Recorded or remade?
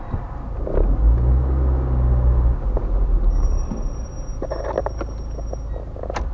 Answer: recorded